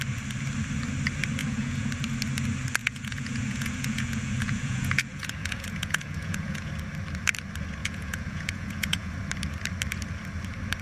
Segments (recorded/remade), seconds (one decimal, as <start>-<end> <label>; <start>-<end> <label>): 0.0-1.4 recorded; 1.4-1.9 remade; 1.9-2.8 recorded; 2.8-6.7 remade; 6.7-7.8 recorded; 7.8-9.1 remade; 9.1-10.8 recorded